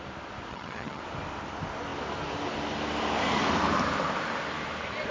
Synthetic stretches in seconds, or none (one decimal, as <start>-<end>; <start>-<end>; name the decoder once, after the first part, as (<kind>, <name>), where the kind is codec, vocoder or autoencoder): 0.5-1.0 (vocoder, HiFi-GAN)